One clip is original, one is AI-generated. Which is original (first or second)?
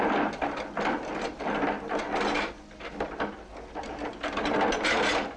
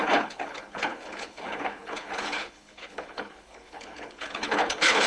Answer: first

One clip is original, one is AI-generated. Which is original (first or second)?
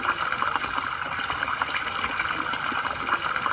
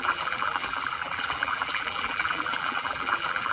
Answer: first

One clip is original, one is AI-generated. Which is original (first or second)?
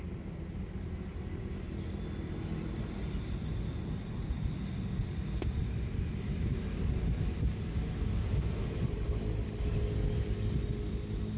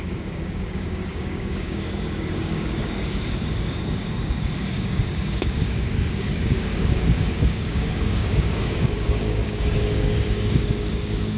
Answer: first